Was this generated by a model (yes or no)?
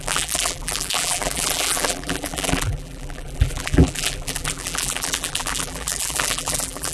yes